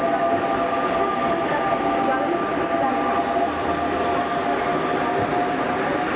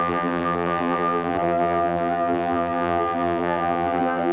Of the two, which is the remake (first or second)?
second